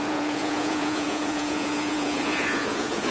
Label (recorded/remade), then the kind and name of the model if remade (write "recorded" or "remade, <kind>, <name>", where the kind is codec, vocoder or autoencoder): remade, vocoder, Vocos